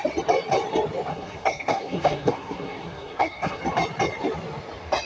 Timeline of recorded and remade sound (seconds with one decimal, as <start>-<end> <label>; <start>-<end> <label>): 0.0-1.1 recorded; 1.1-3.6 remade; 3.6-5.1 recorded